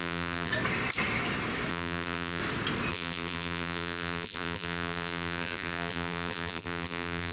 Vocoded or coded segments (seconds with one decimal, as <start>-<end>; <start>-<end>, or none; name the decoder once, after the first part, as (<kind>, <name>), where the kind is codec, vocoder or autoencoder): 0.0-0.5 (vocoder, BigVGAN v2); 1.7-2.4; 2.9-7.3